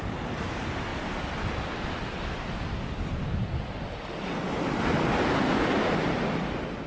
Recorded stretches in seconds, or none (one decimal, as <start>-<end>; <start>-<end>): 0.0-6.9